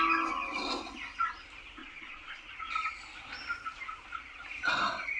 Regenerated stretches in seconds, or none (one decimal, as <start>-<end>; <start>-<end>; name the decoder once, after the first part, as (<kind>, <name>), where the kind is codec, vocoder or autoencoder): 1.8-2.4 (vocoder, Vocos)